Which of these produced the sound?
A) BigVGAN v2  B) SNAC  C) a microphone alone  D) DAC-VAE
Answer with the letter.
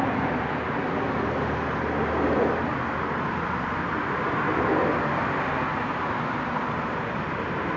C